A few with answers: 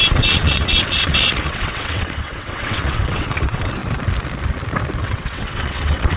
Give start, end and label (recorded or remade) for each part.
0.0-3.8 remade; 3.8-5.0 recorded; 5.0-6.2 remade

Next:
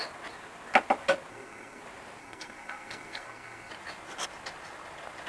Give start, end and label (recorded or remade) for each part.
0.0-1.3 recorded; 1.3-1.8 remade; 1.8-2.2 recorded; 2.2-3.7 remade; 3.7-5.3 recorded